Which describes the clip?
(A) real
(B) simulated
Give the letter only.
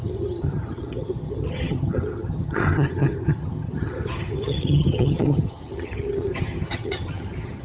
B